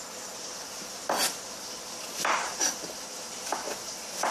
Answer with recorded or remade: recorded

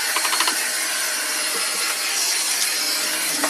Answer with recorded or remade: recorded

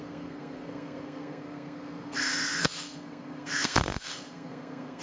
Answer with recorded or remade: remade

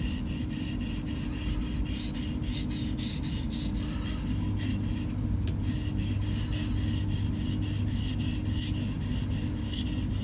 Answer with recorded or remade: recorded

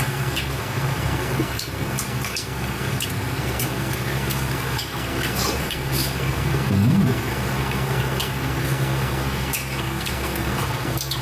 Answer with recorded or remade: remade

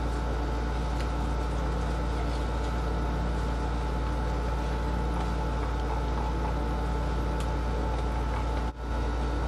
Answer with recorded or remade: recorded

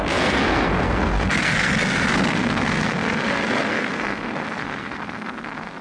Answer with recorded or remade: remade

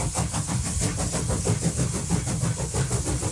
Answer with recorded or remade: recorded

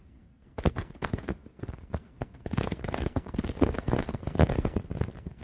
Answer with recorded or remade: remade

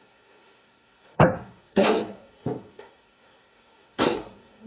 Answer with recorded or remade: remade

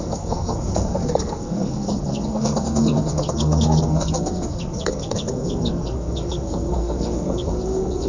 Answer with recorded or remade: remade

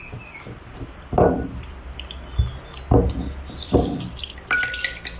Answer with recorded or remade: recorded